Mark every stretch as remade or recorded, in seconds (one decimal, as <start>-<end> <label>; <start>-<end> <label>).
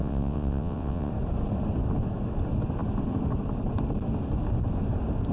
0.0-1.1 remade; 1.1-5.3 recorded